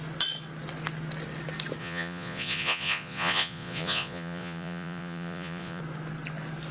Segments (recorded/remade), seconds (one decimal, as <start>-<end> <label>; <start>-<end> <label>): 0.0-1.8 recorded; 1.8-5.8 remade; 5.8-6.7 recorded